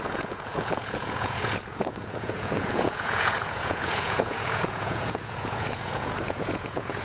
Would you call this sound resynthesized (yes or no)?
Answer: yes